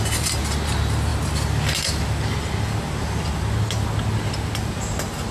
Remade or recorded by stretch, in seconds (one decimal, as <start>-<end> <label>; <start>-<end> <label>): 0.0-5.3 recorded